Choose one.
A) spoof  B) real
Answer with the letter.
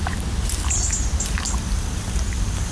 B